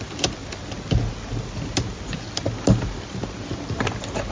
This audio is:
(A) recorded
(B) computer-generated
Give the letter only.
A